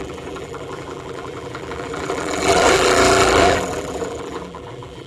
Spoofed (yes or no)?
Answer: yes